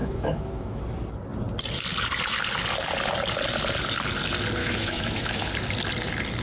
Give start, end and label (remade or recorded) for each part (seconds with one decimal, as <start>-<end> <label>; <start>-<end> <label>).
0.0-0.8 remade; 0.8-4.6 recorded; 4.6-5.5 remade; 5.5-6.4 recorded